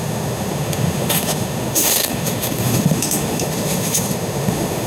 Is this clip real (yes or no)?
no